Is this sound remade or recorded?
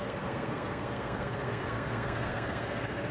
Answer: remade